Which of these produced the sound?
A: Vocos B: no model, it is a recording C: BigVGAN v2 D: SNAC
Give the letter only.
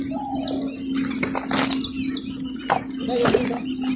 B